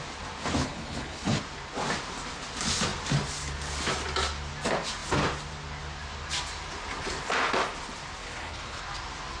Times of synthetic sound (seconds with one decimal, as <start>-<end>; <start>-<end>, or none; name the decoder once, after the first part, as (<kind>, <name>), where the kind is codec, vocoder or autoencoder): 0.6-1.4 (codec, HILCodec); 8.2-8.8